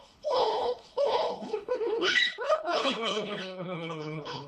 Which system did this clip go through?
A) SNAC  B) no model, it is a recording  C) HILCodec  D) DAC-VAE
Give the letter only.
C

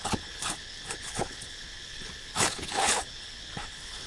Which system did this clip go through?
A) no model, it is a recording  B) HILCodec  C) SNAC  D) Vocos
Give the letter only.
B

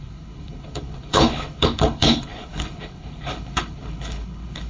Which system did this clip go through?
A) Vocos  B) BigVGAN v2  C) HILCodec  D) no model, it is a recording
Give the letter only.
C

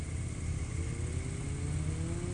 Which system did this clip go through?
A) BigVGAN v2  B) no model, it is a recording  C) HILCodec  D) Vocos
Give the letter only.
B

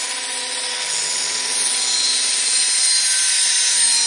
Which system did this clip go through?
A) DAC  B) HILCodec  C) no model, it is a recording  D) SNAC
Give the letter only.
C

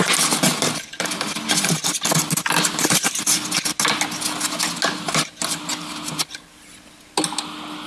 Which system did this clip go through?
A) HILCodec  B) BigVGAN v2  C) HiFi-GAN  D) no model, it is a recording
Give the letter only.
D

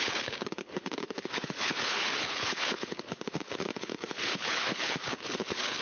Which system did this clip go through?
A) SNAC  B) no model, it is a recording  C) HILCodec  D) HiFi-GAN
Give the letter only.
C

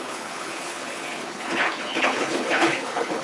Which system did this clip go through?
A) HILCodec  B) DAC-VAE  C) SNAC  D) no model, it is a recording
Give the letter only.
A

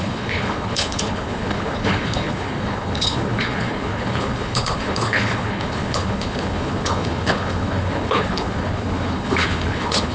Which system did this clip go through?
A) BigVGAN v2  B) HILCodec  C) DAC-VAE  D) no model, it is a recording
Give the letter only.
B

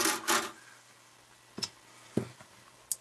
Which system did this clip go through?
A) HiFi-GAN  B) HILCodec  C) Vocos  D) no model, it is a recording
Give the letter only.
D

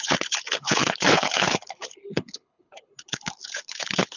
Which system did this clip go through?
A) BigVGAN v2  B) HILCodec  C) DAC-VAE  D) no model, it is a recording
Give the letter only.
B